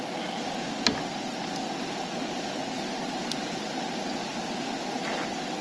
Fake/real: real